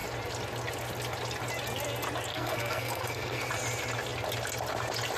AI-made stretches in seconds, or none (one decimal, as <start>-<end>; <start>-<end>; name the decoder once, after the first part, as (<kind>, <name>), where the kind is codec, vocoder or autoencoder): 2.3-3.5 (codec, SNAC)

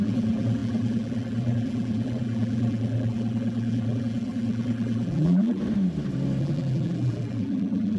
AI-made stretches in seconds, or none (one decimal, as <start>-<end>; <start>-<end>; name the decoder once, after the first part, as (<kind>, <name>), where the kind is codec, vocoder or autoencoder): 0.0-5.6 (vocoder, BigVGAN v2); 6.4-8.0

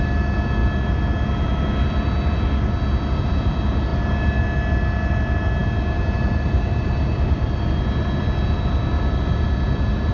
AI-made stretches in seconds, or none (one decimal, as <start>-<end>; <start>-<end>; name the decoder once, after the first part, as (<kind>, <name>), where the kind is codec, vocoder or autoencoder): none

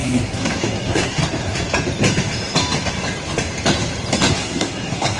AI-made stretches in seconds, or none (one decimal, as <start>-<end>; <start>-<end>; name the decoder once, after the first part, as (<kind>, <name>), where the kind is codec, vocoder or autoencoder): 0.0-1.2 (codec, SNAC); 4.3-5.2

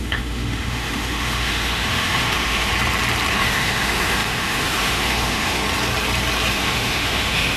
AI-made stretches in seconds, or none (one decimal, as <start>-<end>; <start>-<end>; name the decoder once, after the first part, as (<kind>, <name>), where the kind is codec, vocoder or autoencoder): 0.0-2.7 (autoencoder, DAC-VAE); 3.3-5.6; 6.5-7.6